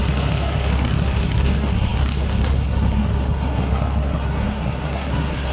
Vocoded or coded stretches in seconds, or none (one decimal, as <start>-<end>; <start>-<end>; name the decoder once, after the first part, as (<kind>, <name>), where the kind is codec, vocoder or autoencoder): 0.0-5.5 (codec, SNAC)